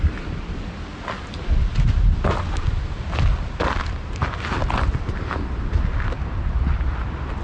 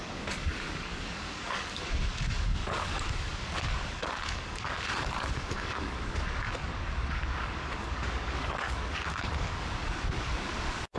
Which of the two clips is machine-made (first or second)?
second